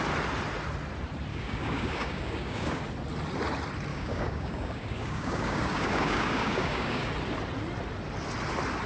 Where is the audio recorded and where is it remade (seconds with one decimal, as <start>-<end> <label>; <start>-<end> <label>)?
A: 0.0-1.3 recorded; 1.3-2.8 remade; 2.8-3.9 recorded; 3.9-7.1 remade; 7.1-8.9 recorded